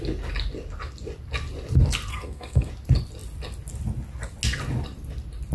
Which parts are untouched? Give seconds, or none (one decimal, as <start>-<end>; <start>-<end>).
0.0-2.1; 2.7-5.5